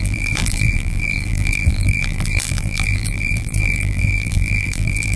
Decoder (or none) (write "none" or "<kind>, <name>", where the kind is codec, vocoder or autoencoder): vocoder, BigVGAN v2